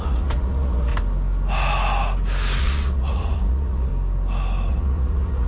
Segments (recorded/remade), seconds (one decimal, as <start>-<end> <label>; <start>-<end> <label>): 0.0-0.9 remade; 0.9-2.6 recorded; 2.6-3.9 remade; 3.9-4.7 recorded; 4.7-5.5 remade